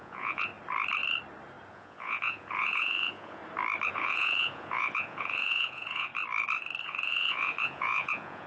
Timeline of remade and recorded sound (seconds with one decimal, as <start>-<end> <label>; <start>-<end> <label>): 0.0-0.5 remade; 0.5-1.7 recorded; 1.7-3.4 remade; 3.4-3.9 recorded; 3.9-6.1 remade; 6.1-6.8 recorded; 6.8-8.5 remade